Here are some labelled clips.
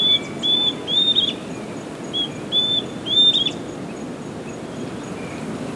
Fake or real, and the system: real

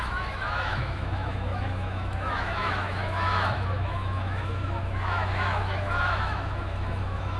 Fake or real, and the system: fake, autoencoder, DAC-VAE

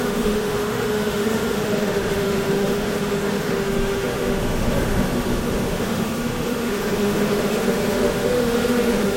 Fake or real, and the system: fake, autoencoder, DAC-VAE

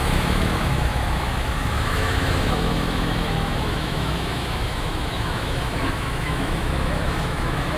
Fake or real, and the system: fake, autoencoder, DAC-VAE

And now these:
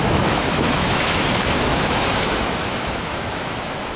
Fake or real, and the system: fake, autoencoder, DAC-VAE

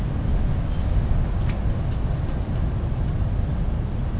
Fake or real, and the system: real